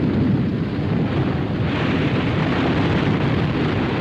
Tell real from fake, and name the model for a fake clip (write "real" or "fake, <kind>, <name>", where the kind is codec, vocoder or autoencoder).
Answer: real